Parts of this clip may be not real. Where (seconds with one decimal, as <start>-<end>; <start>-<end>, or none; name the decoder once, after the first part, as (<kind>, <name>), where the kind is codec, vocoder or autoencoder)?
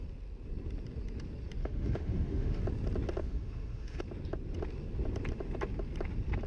1.6-2.6 (autoencoder, DAC-VAE); 3.2-4.0